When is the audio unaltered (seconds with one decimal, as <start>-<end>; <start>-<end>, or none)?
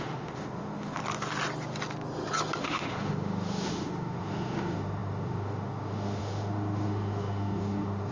1.0-2.6